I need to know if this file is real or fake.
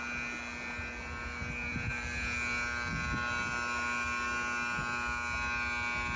real